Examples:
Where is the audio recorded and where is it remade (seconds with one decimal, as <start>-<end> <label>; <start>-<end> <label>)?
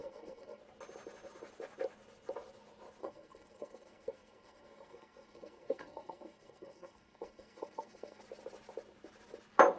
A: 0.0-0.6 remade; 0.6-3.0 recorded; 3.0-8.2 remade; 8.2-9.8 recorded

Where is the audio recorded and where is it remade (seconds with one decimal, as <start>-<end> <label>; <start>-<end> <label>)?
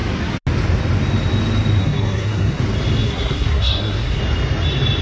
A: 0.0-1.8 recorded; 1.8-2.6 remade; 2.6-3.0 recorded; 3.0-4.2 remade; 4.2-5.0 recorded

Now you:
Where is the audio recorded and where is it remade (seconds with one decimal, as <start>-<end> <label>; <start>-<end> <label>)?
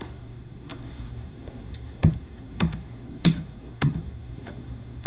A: 0.0-5.1 remade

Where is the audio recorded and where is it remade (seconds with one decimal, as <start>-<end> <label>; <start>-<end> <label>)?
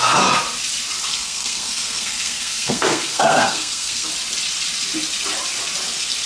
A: 0.0-1.1 recorded; 1.1-4.1 remade; 4.1-6.3 recorded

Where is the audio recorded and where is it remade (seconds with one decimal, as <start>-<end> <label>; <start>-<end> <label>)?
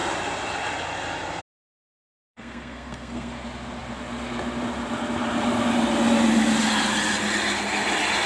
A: 0.0-1.8 recorded; 1.8-3.3 remade; 3.3-8.3 recorded